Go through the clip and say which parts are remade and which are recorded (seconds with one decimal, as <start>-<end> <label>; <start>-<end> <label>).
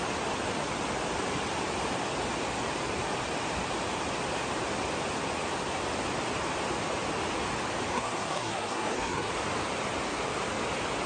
0.0-7.9 recorded; 7.9-9.3 remade; 9.3-11.1 recorded